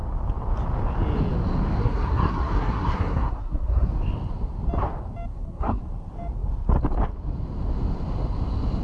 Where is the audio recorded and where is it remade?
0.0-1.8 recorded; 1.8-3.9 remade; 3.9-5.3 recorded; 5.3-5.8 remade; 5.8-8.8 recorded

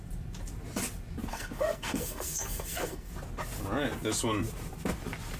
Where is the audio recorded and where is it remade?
0.0-1.3 recorded; 1.3-3.1 remade; 3.1-5.4 recorded